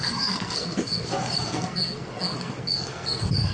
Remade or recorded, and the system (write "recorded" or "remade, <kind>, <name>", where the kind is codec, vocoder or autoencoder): remade, codec, SNAC